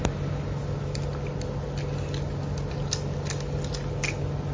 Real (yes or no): yes